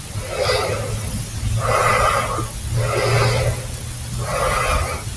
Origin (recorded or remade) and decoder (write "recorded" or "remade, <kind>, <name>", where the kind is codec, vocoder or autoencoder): recorded